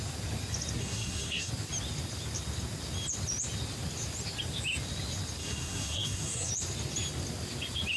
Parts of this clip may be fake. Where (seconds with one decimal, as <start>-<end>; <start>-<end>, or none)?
0.8-1.5; 5.4-6.5